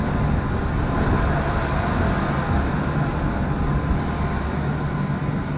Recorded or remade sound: recorded